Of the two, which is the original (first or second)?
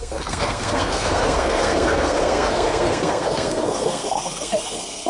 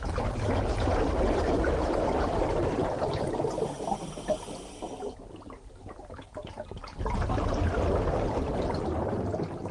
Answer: second